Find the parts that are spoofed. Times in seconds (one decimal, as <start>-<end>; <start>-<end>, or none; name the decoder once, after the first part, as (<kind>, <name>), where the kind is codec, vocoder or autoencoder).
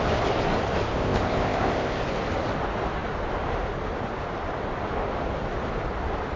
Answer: 0.9-2.0 (codec, ZipCodec)